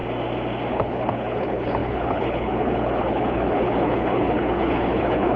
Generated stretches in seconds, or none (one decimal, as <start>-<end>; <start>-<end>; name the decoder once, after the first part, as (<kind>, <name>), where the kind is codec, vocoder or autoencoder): 0.7-5.4 (codec, HILCodec)